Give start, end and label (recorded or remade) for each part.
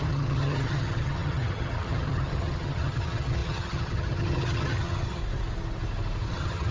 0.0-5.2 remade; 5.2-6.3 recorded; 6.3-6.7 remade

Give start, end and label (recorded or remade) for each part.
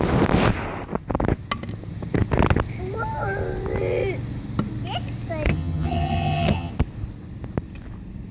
0.0-5.5 recorded; 5.5-6.7 remade; 6.7-8.3 recorded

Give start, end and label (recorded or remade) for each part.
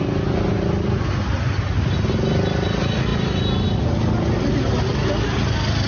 0.0-5.9 recorded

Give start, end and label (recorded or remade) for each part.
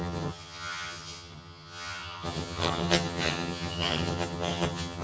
0.0-5.0 remade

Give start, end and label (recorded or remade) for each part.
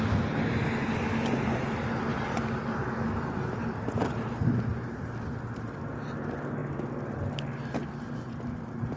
0.0-9.0 recorded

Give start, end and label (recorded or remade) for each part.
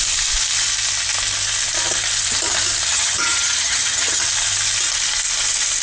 0.0-2.9 recorded; 2.9-4.2 remade; 4.2-5.8 recorded